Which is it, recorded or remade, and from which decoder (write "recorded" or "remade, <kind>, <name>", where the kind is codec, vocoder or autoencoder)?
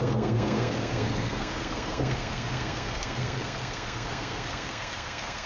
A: remade, codec, SNAC